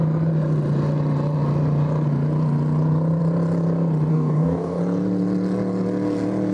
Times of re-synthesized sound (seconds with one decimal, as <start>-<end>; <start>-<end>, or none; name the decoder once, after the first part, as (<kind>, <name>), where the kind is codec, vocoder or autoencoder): 4.1-4.8 (codec, DAC)